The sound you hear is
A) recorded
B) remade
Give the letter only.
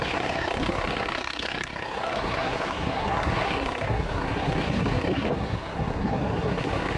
B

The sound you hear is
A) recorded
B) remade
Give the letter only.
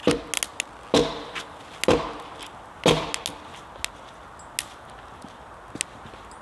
A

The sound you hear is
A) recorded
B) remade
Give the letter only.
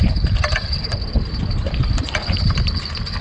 A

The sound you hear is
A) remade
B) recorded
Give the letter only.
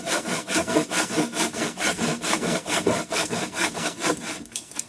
A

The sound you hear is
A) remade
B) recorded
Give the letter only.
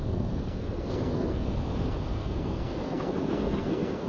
A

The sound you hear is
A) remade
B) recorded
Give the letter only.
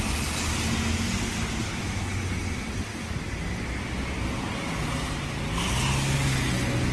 B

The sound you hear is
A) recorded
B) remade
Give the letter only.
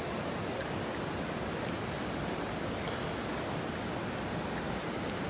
A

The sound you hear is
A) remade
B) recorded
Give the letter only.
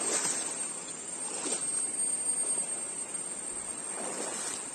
B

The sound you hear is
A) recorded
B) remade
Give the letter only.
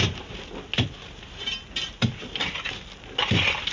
A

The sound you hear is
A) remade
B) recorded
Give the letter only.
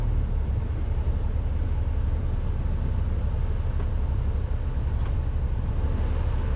B